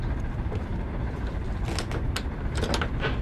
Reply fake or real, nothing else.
real